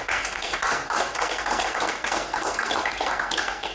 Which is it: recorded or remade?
remade